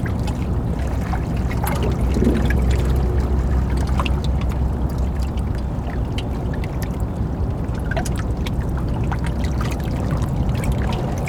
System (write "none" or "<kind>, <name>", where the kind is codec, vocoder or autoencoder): none